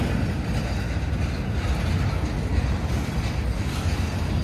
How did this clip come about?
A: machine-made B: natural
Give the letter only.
B